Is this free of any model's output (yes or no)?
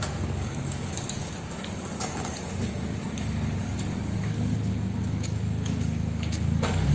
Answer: no